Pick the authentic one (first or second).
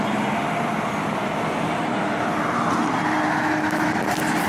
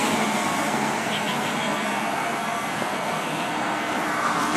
first